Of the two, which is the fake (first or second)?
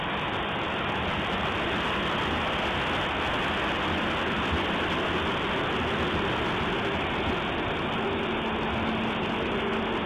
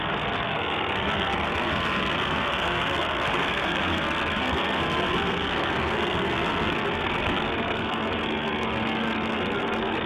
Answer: second